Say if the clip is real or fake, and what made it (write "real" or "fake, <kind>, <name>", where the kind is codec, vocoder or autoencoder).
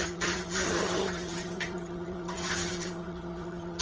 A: fake, vocoder, HiFi-GAN